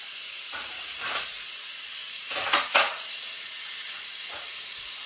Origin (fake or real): fake